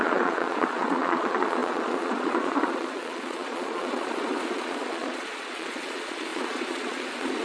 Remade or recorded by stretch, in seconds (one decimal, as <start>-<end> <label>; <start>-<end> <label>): 0.0-7.4 remade